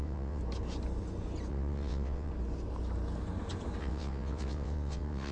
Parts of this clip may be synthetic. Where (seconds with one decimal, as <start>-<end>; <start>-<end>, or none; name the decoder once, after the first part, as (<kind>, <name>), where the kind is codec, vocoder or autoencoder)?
0.0-0.4 (vocoder, WaveNeXt); 1.5-2.3; 3.8-5.3